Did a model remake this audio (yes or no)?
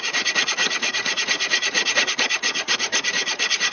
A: yes